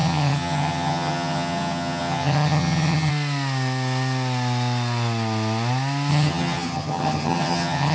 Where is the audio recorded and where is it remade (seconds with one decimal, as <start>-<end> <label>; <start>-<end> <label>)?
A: 0.0-3.1 remade; 3.1-6.1 recorded; 6.1-7.9 remade